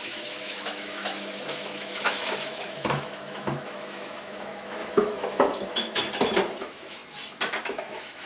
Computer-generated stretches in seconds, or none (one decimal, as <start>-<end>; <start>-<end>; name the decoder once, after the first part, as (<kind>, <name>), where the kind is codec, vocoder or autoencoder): 0.0-6.0 (autoencoder, DAC-VAE); 6.6-7.0; 7.6-8.3

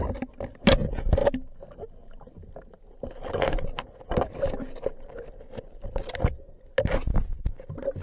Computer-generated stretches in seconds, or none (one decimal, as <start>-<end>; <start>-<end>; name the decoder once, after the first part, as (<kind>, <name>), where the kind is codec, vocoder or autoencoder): none